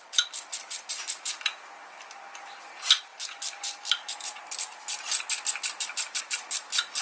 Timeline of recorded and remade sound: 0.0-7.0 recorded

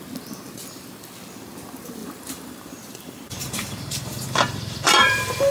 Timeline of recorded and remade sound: 0.0-2.0 recorded; 2.0-5.5 remade

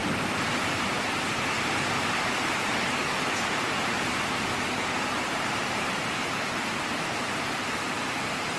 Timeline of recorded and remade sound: 0.0-1.6 recorded; 1.6-8.6 remade

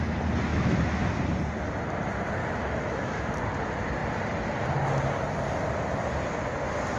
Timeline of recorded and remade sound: 0.0-0.5 recorded; 0.5-1.1 remade; 1.1-2.4 recorded; 2.4-3.3 remade; 3.3-7.0 recorded

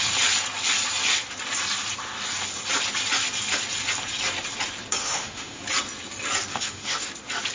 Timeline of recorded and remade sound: 0.0-5.0 recorded; 5.0-5.6 remade; 5.6-6.5 recorded; 6.5-7.1 remade; 7.1-7.5 recorded

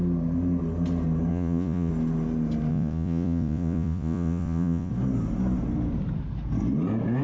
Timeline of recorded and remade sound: 0.0-1.3 recorded; 1.3-1.9 remade; 1.9-2.7 recorded; 2.7-4.9 remade; 4.9-7.2 recorded

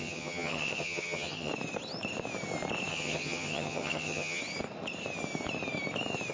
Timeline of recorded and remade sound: 0.0-1.5 remade; 1.5-2.9 recorded; 2.9-4.4 remade; 4.4-6.3 recorded